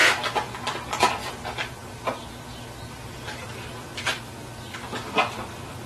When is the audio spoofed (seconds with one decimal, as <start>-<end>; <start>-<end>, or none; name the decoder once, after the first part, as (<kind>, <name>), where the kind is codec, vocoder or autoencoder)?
none